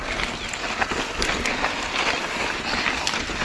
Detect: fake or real real